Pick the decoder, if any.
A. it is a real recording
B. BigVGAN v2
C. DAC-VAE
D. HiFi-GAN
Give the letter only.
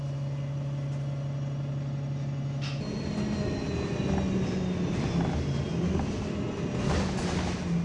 A